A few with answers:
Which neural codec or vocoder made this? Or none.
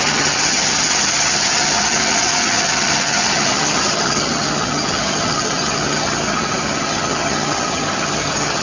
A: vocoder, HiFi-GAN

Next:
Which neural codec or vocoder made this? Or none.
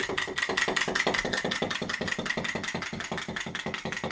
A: none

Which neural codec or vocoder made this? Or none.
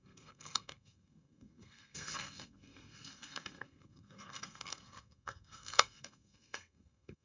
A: codec, SNAC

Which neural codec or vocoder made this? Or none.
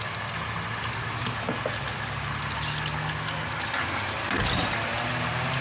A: none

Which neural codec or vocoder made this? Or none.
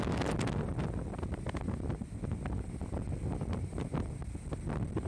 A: none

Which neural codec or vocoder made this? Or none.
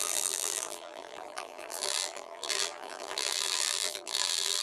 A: vocoder, BigVGAN v2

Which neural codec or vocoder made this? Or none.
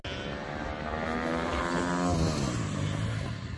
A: none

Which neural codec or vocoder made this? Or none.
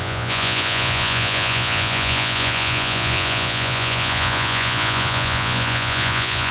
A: vocoder, Vocos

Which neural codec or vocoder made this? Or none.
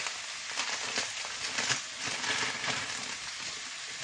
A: none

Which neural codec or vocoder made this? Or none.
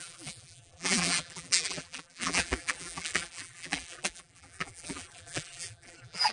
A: vocoder, BigVGAN v2